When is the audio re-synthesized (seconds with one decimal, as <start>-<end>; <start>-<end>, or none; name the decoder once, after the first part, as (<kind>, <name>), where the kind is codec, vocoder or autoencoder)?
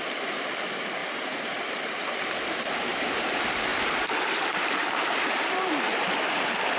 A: 1.0-3.3 (vocoder, BigVGAN v2); 3.7-5.7